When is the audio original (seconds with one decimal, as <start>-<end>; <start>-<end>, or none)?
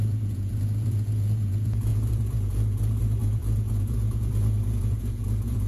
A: none